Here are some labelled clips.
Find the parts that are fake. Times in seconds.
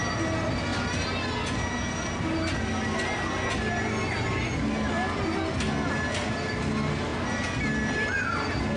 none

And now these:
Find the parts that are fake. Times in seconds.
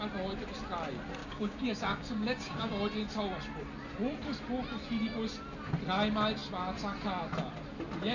1.2-2.7 (codec, DAC)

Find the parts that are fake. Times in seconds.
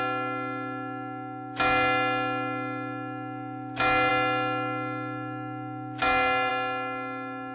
none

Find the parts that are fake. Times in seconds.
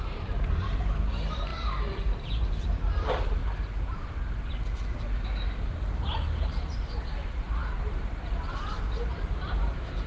0.0-3.4 (vocoder, BigVGAN v2); 6.7-10.1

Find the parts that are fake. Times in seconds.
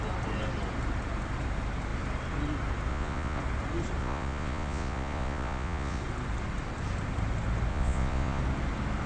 2.9-3.4 (vocoder, Vocos); 4.0-6.0; 7.7-8.4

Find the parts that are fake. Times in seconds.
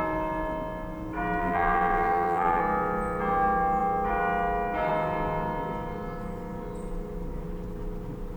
1.4-2.6 (vocoder, BigVGAN v2)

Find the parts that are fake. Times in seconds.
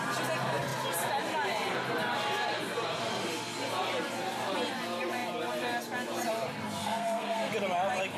6.8-7.5 (codec, SNAC)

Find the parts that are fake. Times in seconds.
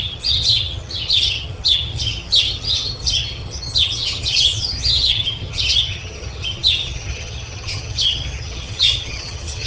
0.0-9.7 (vocoder, HiFi-GAN)